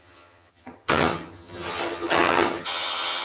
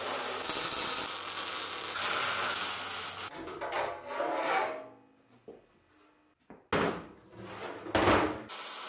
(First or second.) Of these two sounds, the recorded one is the second